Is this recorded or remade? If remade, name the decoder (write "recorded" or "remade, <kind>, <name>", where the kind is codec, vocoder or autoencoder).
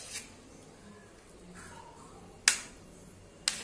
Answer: recorded